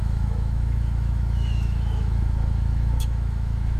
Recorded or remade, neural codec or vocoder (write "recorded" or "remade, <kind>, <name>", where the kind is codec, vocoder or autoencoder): remade, autoencoder, DAC-VAE